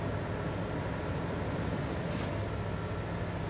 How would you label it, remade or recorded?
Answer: recorded